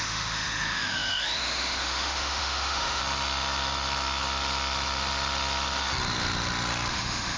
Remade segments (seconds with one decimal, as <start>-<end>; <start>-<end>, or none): 0.0-3.0; 6.9-7.4